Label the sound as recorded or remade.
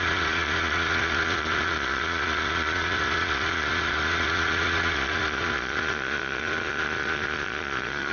remade